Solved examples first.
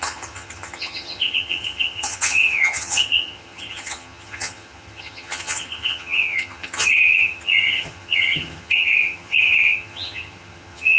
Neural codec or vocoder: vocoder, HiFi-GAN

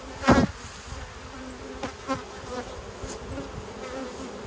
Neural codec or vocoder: none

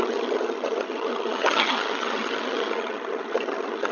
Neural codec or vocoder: vocoder, HiFi-GAN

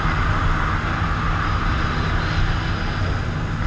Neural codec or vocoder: none